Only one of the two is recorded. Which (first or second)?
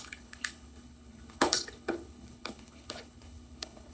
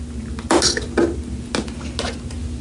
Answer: second